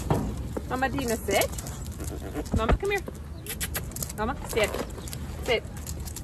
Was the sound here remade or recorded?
recorded